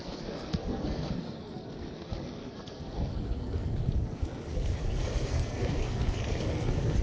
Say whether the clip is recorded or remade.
remade